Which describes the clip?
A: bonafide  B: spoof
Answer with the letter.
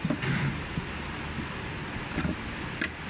A